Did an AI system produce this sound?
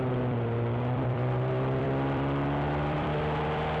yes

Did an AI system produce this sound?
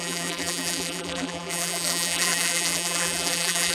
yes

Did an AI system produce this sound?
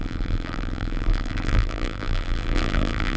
yes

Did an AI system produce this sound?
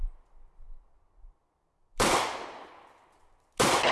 no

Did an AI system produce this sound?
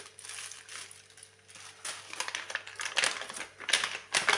no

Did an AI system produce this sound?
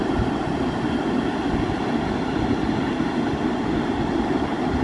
no